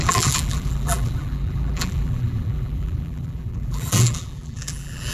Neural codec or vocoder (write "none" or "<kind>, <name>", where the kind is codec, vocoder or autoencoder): vocoder, BigVGAN v2